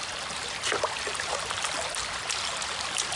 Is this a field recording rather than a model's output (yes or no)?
yes